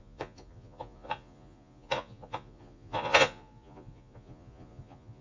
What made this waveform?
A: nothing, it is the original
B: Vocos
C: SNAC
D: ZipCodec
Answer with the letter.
B